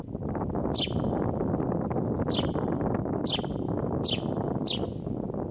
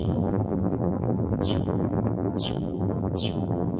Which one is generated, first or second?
second